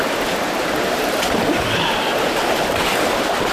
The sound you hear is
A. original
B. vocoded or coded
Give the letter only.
A